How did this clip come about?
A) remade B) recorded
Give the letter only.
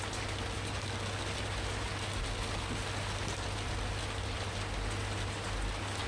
B